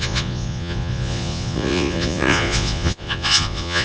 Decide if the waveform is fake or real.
fake